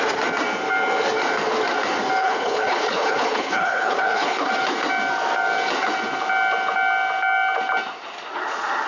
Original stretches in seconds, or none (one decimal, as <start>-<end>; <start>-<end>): 0.0-2.2; 4.5-8.9